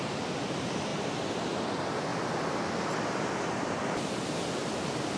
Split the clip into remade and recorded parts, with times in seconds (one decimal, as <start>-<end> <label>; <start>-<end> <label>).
0.0-2.1 remade; 2.1-3.0 recorded; 3.0-5.2 remade